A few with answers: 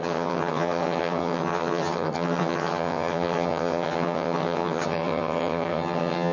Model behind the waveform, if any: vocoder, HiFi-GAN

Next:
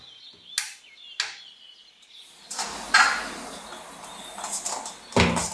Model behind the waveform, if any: none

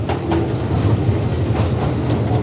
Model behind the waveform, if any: none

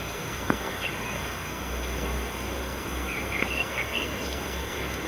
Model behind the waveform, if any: codec, SNAC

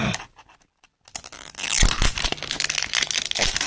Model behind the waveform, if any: none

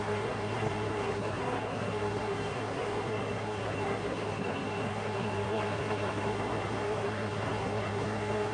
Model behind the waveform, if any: codec, SNAC